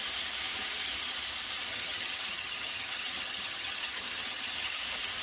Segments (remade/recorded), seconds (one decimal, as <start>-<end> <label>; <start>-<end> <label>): 0.0-1.7 recorded; 1.7-4.8 remade; 4.8-5.2 recorded